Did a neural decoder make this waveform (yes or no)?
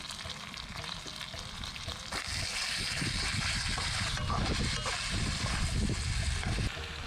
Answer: no